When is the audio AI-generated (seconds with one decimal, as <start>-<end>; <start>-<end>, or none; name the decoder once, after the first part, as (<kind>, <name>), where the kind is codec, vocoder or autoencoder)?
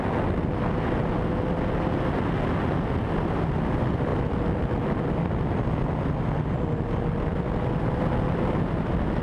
none